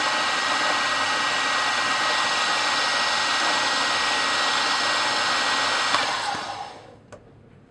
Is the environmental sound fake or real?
real